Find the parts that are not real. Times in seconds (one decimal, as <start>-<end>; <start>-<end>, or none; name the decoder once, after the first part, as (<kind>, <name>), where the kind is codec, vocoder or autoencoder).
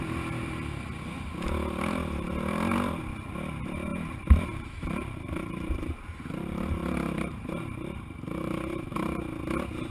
3.9-9.2 (vocoder, BigVGAN v2)